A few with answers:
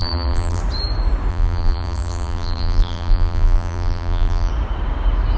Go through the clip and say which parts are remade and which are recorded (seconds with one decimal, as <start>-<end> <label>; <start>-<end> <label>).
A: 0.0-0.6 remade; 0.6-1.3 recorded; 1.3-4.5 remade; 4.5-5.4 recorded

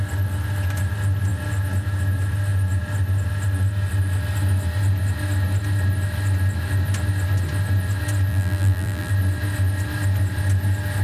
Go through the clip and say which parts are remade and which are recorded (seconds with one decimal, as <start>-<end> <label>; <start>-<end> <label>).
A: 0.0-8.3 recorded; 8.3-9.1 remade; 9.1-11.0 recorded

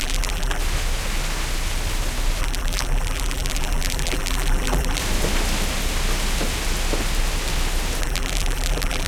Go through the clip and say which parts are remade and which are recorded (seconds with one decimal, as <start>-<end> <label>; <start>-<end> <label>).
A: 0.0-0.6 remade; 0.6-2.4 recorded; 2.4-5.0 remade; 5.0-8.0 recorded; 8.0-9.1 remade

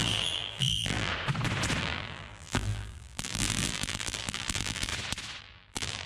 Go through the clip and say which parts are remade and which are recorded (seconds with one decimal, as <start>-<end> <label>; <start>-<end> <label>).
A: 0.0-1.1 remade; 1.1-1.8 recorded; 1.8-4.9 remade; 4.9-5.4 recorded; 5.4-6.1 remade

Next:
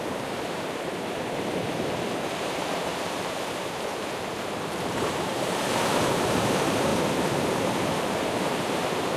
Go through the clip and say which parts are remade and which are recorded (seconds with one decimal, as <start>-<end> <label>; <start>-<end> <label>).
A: 0.0-6.9 remade; 6.9-8.2 recorded; 8.2-9.2 remade